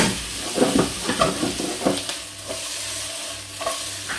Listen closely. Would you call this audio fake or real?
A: real